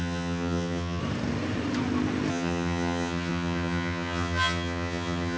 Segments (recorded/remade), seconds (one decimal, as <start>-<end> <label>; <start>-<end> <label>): 0.0-1.0 remade; 1.0-2.3 recorded; 2.3-5.4 remade